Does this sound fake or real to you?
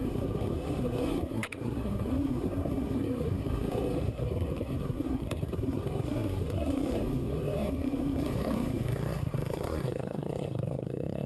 fake